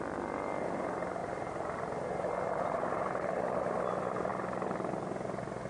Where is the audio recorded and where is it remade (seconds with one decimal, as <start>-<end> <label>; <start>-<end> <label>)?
0.0-5.7 recorded